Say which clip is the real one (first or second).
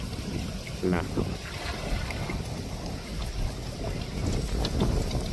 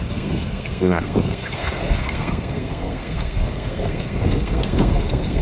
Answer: first